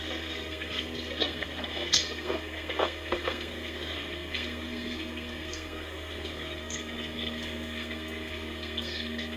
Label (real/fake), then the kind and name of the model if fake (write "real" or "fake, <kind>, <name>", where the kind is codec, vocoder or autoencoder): fake, codec, SNAC